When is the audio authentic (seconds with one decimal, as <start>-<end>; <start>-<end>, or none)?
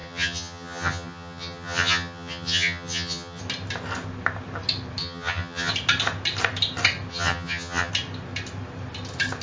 3.4-5.0; 5.7-7.1; 7.9-9.4